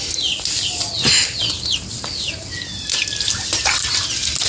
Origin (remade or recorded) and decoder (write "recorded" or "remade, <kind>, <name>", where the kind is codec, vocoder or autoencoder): recorded